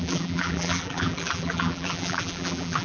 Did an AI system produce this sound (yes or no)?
yes